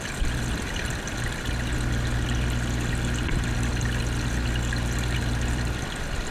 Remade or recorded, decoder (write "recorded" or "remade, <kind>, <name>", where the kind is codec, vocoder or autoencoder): recorded